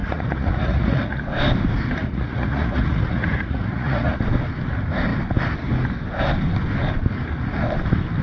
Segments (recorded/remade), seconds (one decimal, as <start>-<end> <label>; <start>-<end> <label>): 0.0-1.2 remade; 1.2-2.0 recorded; 2.0-4.2 remade; 4.2-8.2 recorded